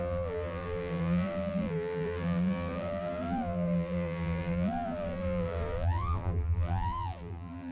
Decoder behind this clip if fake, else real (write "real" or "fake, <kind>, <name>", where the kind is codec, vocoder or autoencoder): fake, vocoder, BigVGAN v2